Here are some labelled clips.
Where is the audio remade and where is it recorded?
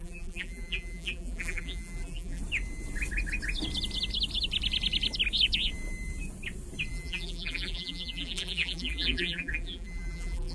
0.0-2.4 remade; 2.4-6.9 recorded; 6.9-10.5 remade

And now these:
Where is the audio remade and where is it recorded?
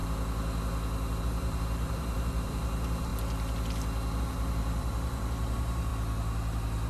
0.0-1.2 recorded; 1.2-3.1 remade; 3.1-4.2 recorded; 4.2-5.9 remade; 5.9-6.9 recorded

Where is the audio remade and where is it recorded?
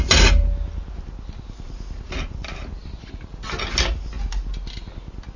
0.0-5.4 recorded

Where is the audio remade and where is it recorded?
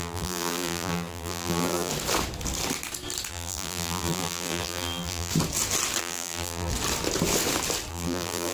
0.0-1.9 remade; 1.9-3.3 recorded; 3.3-5.3 remade; 5.3-6.0 recorded; 6.0-6.7 remade; 6.7-7.9 recorded; 7.9-8.5 remade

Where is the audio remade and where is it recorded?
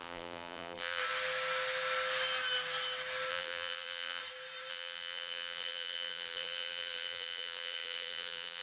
0.0-1.0 remade; 1.0-3.3 recorded; 3.3-4.2 remade; 4.2-4.7 recorded; 4.7-8.6 remade